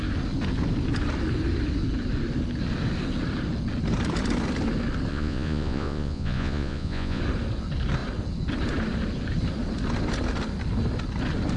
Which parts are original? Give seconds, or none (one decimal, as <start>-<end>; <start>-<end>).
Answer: 0.0-5.1; 7.2-11.6